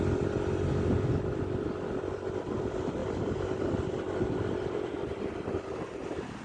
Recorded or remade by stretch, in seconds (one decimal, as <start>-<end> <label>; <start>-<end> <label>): 0.0-6.4 recorded